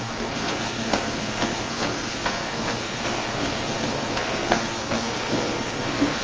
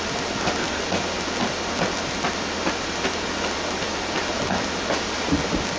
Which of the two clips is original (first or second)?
second